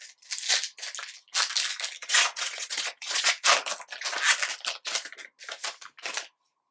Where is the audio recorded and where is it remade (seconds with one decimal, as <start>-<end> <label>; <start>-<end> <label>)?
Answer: 0.0-2.0 recorded; 2.0-3.3 remade; 3.3-6.7 recorded